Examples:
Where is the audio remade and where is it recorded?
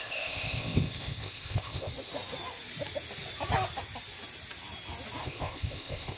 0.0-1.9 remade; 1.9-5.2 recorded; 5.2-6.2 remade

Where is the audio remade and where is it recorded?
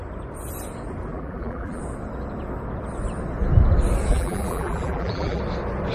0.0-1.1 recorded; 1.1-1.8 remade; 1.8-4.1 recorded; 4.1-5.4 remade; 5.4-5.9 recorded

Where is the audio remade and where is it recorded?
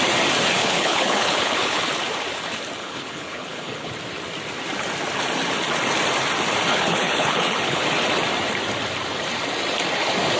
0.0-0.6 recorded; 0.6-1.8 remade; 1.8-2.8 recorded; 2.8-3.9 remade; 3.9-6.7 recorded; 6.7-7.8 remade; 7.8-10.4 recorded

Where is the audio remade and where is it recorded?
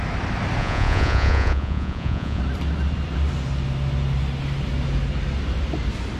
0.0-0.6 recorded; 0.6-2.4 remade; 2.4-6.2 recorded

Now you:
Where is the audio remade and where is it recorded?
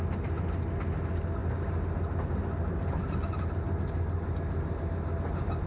0.0-5.7 recorded